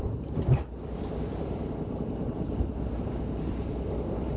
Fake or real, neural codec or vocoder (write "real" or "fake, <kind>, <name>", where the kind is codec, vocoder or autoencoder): fake, vocoder, BigVGAN v2